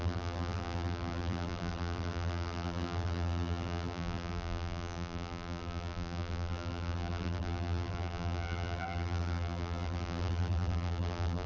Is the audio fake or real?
fake